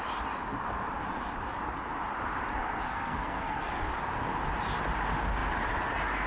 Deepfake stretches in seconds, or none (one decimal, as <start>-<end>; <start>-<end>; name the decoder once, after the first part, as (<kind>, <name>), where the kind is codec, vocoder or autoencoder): 2.6-3.9 (codec, SNAC)